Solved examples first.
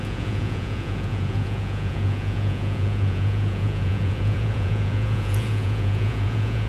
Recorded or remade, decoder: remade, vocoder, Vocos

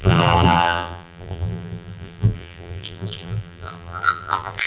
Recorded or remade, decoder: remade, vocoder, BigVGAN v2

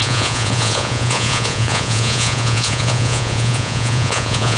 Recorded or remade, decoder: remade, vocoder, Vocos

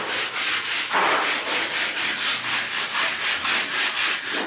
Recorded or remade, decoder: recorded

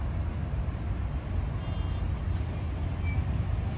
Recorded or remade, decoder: recorded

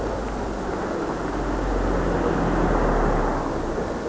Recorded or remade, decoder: recorded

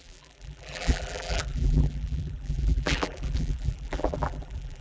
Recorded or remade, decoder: remade, vocoder, BigVGAN v2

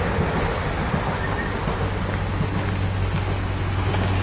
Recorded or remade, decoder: recorded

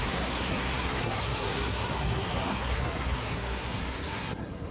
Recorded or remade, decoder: remade, codec, SNAC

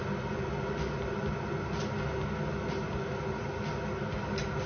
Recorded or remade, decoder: recorded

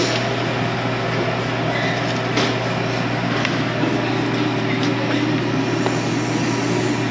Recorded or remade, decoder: recorded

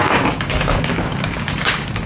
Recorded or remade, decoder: remade, codec, DAC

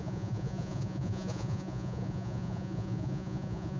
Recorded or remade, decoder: remade, vocoder, Vocos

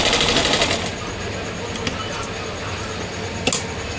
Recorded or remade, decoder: recorded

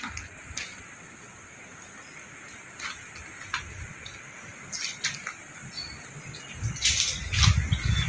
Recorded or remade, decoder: recorded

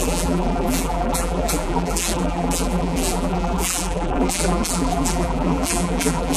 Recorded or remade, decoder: remade, vocoder, BigVGAN v2